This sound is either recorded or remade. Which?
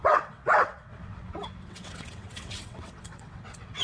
remade